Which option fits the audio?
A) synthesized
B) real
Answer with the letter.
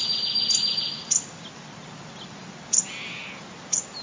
B